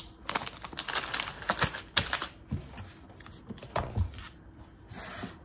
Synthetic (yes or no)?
no